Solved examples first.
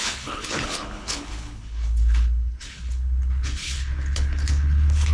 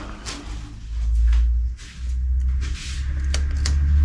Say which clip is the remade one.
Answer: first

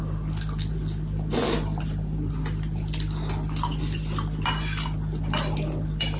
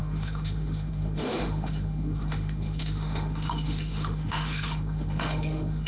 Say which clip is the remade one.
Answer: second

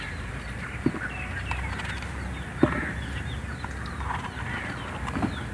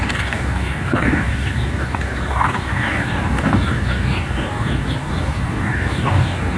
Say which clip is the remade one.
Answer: second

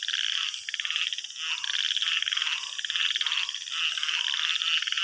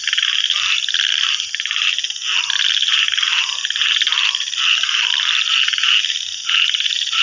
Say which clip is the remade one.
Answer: second